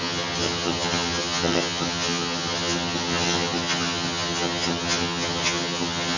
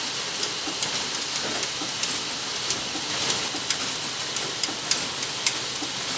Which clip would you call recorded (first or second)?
second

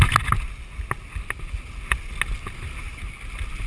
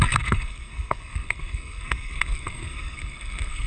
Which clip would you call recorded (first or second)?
first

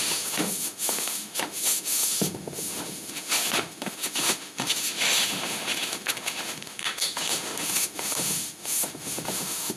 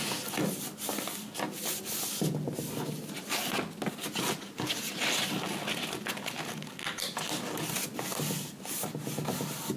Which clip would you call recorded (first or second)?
second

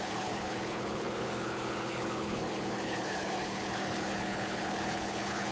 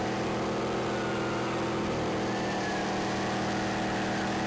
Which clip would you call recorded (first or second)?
second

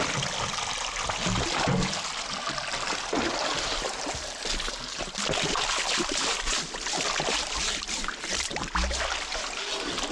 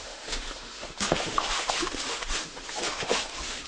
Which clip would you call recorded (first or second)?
first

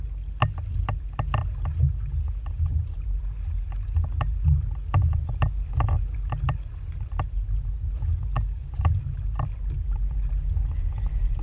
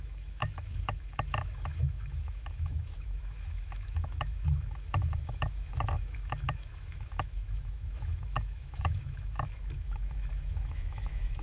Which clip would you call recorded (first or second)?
first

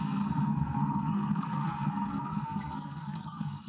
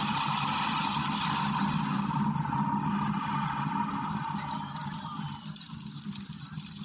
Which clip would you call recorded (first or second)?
second